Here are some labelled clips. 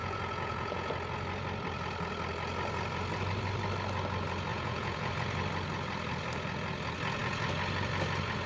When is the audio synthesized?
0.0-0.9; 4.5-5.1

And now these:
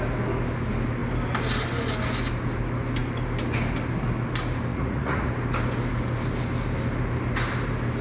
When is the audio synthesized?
4.7-5.3

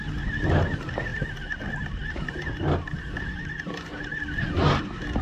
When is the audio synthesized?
none

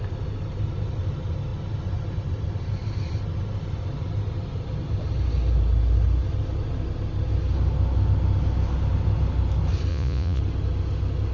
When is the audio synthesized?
9.9-10.4